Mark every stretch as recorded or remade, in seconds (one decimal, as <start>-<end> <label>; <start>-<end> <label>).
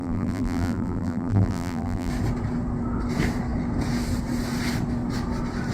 0.0-2.1 remade; 2.1-5.7 recorded